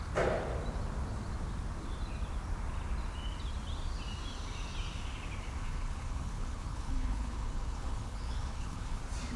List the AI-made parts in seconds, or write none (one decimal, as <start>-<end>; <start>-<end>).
5.6-9.0